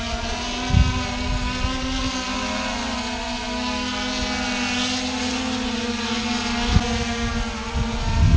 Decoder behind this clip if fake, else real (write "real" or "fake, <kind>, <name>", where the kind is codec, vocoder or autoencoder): real